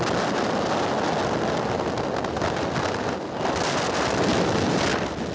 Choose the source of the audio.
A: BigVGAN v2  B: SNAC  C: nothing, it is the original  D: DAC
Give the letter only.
C